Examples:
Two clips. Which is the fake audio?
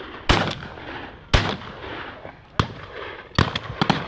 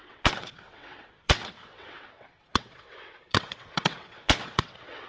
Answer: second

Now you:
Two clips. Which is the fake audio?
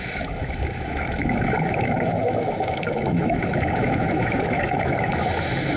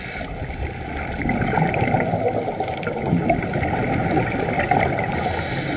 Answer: first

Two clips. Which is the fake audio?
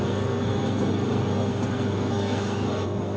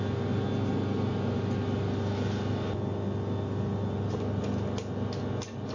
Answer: first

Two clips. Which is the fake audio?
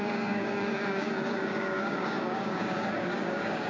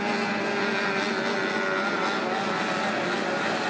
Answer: first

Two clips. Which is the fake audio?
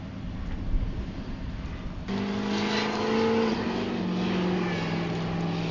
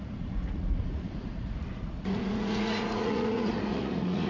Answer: second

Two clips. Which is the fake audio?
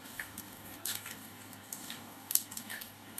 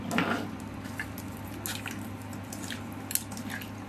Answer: first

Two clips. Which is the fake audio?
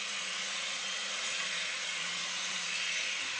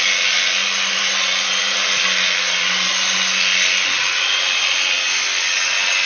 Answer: first